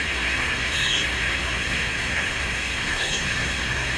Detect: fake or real fake